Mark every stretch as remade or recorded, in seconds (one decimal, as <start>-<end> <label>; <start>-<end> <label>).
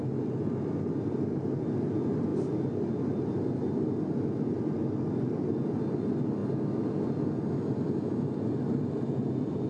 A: 0.0-9.7 recorded